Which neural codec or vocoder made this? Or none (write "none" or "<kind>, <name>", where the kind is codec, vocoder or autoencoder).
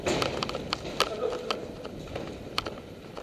none